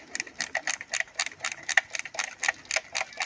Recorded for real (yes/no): yes